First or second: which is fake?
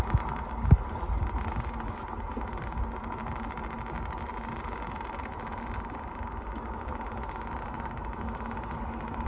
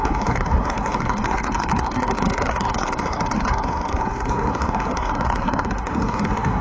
second